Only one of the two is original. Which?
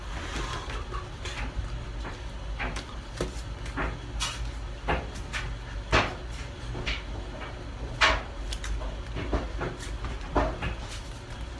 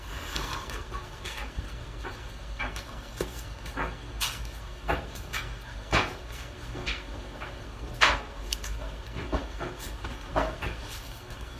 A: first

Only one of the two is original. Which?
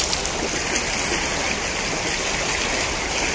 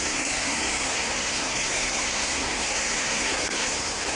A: first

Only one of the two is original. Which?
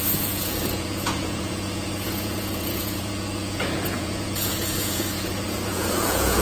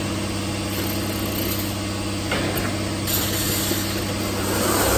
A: second